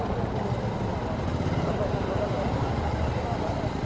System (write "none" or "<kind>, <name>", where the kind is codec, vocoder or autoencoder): none